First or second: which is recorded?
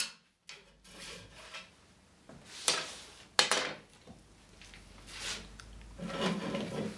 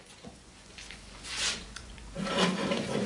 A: first